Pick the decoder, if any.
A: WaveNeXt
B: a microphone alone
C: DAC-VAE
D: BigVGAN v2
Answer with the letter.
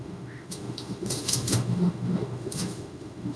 C